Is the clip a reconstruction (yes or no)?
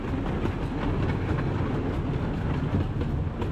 no